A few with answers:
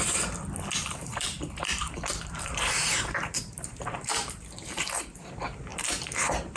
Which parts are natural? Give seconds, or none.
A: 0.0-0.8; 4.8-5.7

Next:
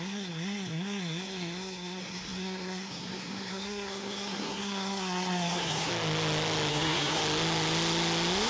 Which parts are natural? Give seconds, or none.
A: 5.9-6.7; 7.2-8.5

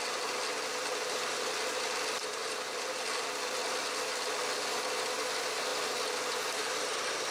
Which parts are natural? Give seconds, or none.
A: 0.0-7.3

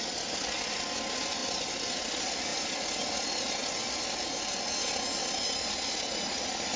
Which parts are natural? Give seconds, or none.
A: 0.0-6.8